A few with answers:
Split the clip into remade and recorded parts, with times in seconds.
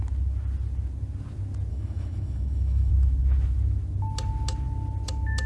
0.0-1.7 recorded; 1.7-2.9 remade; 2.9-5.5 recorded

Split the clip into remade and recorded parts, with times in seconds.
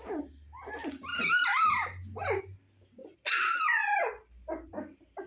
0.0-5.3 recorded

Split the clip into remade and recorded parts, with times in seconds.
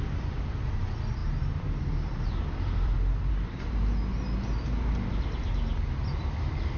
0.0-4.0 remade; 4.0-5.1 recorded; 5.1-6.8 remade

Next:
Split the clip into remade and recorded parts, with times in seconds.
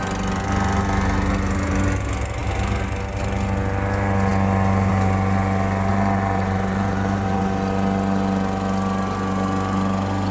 0.0-5.9 recorded; 5.9-7.4 remade; 7.4-10.3 recorded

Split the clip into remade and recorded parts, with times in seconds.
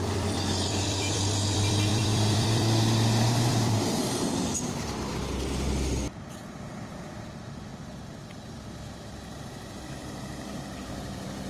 0.0-4.0 remade; 4.0-7.1 recorded; 7.1-7.7 remade; 7.7-8.3 recorded; 8.3-11.5 remade